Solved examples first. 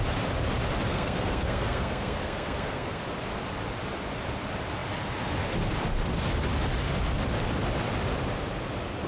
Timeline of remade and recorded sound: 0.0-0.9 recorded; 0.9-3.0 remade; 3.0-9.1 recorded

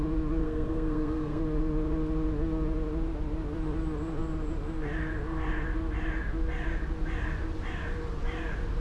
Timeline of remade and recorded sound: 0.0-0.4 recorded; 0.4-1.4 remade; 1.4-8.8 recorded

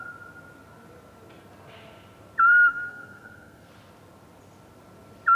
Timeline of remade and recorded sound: 0.0-2.5 recorded; 2.5-3.7 remade; 3.7-5.3 recorded